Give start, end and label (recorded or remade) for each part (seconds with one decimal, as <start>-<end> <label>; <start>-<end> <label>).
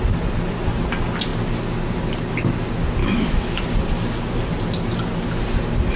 0.0-3.0 recorded; 3.0-3.6 remade; 3.6-6.0 recorded